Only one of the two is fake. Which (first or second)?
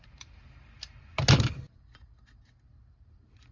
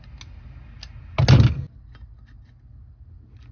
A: first